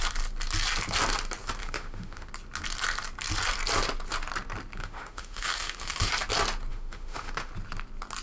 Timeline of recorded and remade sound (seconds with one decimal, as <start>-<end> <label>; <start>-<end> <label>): 0.0-1.6 recorded; 1.6-2.3 remade; 2.3-4.8 recorded; 4.8-6.1 remade; 6.1-6.7 recorded; 6.7-7.5 remade; 7.5-8.2 recorded